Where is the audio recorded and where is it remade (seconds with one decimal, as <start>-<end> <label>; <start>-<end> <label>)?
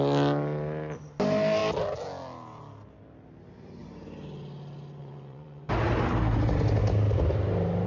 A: 0.0-5.0 recorded; 5.0-5.7 remade; 5.7-7.9 recorded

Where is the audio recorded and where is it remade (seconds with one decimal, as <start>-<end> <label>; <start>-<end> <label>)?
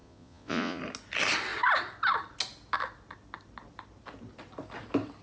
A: 0.0-0.8 remade; 0.8-5.2 recorded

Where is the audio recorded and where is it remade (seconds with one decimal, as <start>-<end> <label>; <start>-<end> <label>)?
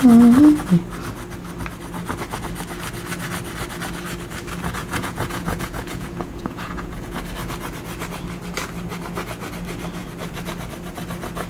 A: 0.0-4.8 recorded; 4.8-7.2 remade; 7.2-11.5 recorded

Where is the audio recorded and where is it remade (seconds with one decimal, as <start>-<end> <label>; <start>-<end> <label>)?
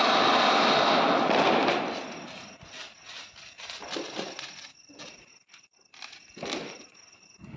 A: 0.0-7.6 recorded